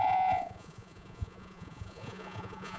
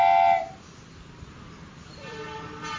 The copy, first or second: first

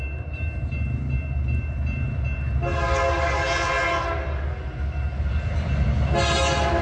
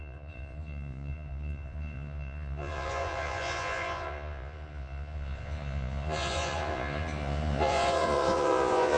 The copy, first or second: second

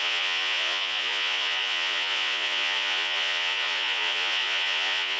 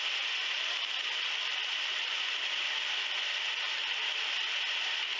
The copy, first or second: first